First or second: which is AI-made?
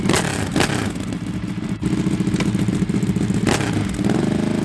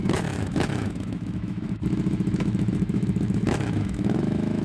second